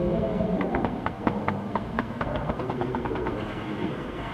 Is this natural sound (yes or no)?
no